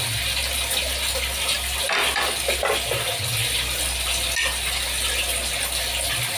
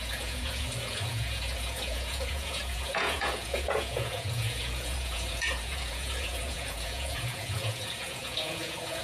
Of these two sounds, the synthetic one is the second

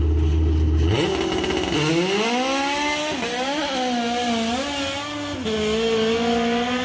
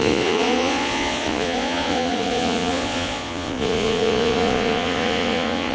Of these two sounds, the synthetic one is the second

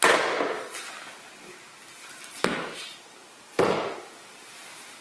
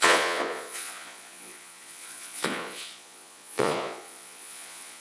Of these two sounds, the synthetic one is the second